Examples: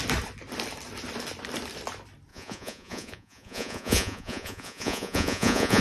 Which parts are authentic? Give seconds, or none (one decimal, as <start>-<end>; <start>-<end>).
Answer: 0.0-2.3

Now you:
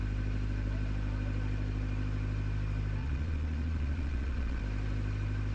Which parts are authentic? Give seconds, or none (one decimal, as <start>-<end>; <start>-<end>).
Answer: 0.0-3.0; 4.6-5.5

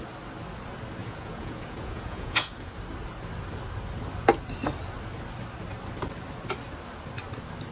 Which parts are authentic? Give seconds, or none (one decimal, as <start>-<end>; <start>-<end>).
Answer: 0.0-1.0; 2.7-7.7

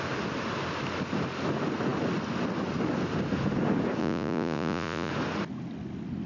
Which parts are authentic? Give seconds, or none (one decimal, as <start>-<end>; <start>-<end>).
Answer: 0.0-4.0; 5.1-6.3

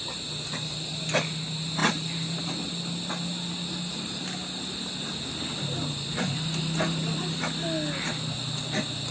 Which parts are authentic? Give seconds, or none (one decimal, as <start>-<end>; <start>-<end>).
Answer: 0.0-9.1

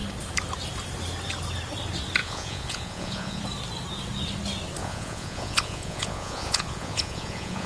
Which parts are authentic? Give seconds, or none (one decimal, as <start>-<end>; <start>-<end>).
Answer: 0.0-2.2; 3.4-4.8

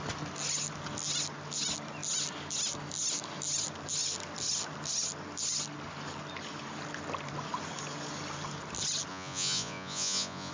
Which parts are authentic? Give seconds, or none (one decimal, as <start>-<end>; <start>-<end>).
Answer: 0.0-9.1